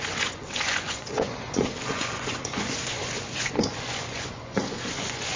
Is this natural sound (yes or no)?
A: no